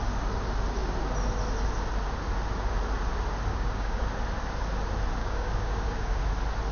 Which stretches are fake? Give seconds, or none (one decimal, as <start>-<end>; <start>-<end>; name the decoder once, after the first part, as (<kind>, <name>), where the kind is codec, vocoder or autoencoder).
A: 3.5-4.0 (codec, DAC); 5.2-6.2